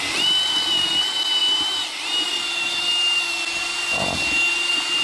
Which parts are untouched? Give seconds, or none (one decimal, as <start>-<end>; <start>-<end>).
0.0-5.0